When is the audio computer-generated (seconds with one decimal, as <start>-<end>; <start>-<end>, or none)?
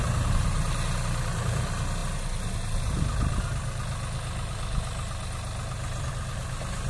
none